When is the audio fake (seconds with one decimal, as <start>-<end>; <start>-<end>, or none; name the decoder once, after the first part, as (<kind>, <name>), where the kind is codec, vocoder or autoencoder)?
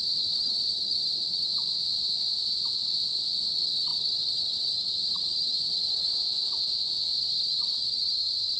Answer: 0.0-1.5 (vocoder, HiFi-GAN); 3.5-6.1; 7.2-8.6